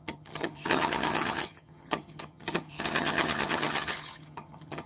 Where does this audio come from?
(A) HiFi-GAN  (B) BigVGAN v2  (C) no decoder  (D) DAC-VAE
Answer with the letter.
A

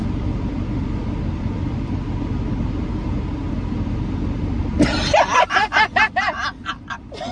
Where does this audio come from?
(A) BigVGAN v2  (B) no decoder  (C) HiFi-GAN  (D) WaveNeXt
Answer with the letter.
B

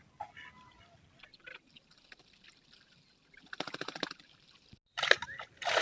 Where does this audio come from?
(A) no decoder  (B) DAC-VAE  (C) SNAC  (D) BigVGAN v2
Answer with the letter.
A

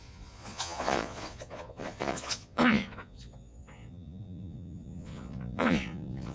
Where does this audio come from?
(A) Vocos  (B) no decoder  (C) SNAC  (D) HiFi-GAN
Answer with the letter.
A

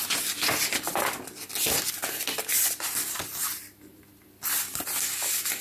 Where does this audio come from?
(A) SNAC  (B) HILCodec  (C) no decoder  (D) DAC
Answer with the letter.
C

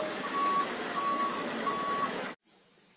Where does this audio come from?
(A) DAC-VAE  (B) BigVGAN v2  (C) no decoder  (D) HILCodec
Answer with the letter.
A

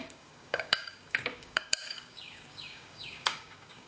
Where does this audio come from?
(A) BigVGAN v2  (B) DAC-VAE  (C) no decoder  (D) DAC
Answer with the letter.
D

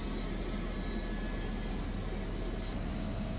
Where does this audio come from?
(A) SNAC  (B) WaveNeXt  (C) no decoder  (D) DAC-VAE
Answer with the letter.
C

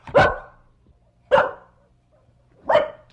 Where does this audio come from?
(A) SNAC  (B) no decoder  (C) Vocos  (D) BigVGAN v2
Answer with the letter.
D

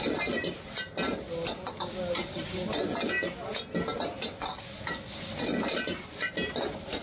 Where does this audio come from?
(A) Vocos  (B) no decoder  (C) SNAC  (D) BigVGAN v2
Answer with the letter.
B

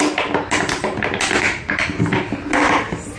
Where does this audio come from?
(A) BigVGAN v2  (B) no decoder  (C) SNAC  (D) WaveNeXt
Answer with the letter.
B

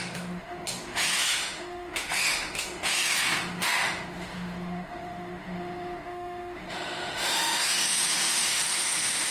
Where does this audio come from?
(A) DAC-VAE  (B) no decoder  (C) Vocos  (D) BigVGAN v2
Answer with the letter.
A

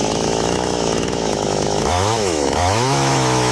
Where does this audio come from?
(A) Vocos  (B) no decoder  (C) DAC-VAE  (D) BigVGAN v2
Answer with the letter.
C